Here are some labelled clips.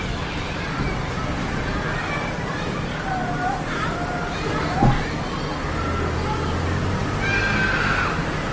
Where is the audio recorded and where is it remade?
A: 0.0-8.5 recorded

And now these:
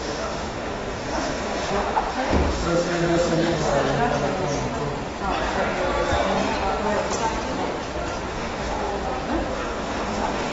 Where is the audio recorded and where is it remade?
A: 0.0-3.7 remade; 3.7-8.3 recorded; 8.3-8.9 remade; 8.9-9.5 recorded; 9.5-10.5 remade

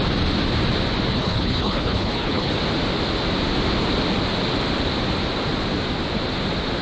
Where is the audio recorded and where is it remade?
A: 0.0-1.1 recorded; 1.1-2.5 remade; 2.5-6.8 recorded